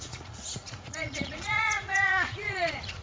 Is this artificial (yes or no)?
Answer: yes